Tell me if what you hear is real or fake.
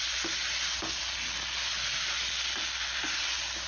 real